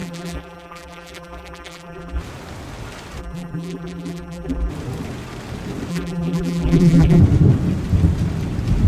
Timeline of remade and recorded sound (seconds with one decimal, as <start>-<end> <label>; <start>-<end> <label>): 0.0-2.2 remade; 2.2-3.2 recorded; 3.2-4.7 remade; 4.7-5.9 recorded; 5.9-7.2 remade; 7.2-8.9 recorded